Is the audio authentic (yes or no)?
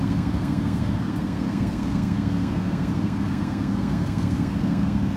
no